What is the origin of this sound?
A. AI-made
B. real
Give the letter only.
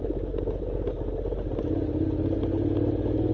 B